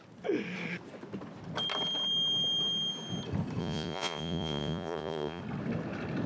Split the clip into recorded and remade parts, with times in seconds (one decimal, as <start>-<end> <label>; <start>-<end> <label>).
0.0-3.6 recorded; 3.6-5.4 remade; 5.4-6.3 recorded